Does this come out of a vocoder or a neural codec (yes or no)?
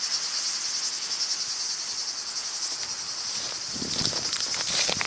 no